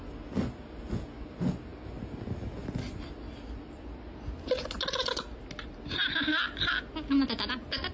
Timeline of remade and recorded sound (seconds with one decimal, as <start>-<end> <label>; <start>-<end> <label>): 0.0-7.9 recorded